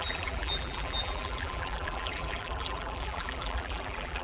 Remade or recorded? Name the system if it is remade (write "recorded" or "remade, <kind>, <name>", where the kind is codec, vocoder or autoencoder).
remade, vocoder, BigVGAN v2